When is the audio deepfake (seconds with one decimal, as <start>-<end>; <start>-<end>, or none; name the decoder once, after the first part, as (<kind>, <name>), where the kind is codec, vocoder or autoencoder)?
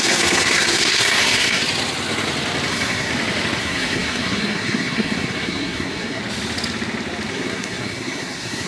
0.0-1.6 (codec, SNAC); 2.7-3.1; 3.6-6.2; 7.3-8.7